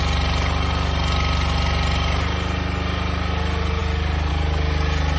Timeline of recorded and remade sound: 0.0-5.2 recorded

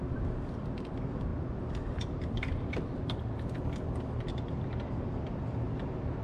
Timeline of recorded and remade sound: 0.0-6.2 recorded

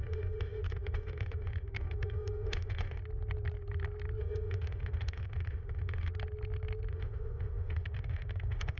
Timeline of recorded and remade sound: 0.0-3.0 remade; 3.0-4.2 recorded; 4.2-6.1 remade; 6.1-6.9 recorded; 6.9-8.8 remade